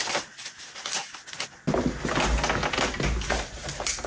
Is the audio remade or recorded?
recorded